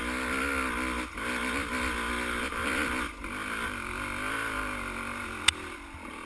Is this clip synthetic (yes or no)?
no